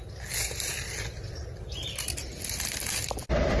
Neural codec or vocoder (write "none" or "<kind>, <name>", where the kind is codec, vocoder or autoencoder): none